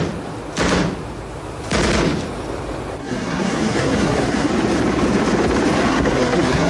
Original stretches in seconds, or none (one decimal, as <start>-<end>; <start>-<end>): 0.0-3.0; 4.5-5.9